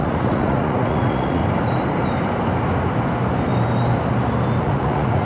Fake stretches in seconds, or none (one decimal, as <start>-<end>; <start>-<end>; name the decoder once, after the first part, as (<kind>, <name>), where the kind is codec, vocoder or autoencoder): 0.0-1.4 (vocoder, Vocos); 4.6-5.3